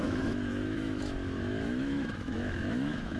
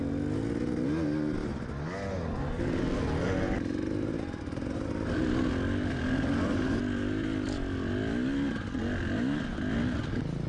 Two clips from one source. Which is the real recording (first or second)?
second